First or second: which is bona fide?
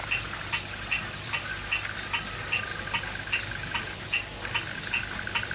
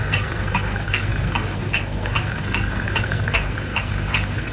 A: first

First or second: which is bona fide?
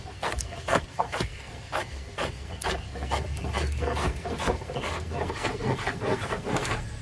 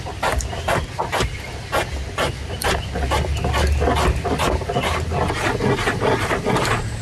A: second